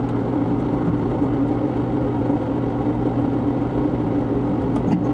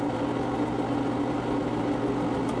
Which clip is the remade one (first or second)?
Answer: first